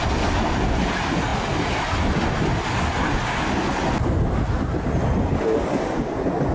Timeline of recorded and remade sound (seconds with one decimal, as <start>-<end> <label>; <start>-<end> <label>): 0.0-6.5 recorded

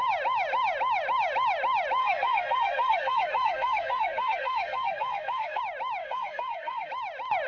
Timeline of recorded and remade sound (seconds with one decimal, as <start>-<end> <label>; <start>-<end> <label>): 0.0-2.0 recorded; 2.0-5.6 remade; 5.6-6.0 recorded; 6.0-6.9 remade; 6.9-7.5 recorded

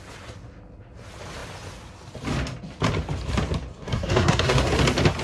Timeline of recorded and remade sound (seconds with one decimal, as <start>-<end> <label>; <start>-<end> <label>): 0.0-3.7 recorded; 3.7-4.7 remade; 4.7-5.2 recorded

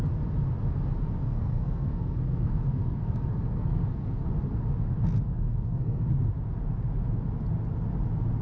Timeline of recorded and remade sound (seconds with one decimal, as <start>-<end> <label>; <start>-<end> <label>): 0.0-1.2 recorded; 1.2-4.3 remade; 4.3-5.3 recorded; 5.3-6.0 remade; 6.0-8.4 recorded

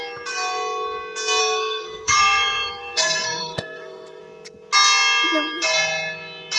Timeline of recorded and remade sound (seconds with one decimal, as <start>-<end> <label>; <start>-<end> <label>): 0.0-1.4 recorded; 1.4-4.2 remade; 4.2-6.6 recorded

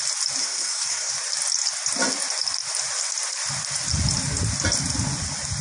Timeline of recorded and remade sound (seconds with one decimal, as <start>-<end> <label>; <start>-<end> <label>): 0.0-0.4 recorded; 0.4-1.1 remade; 1.1-5.6 recorded